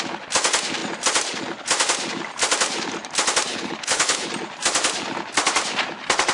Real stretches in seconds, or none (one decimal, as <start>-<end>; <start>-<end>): 0.0-3.5; 4.3-6.3